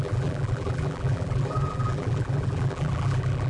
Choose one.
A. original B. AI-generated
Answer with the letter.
B